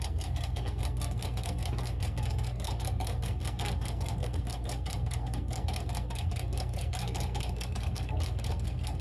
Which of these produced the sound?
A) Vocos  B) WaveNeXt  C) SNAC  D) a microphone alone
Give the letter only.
C